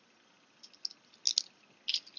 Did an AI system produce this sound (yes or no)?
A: no